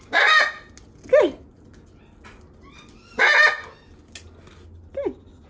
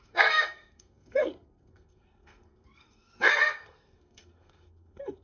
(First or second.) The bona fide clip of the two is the first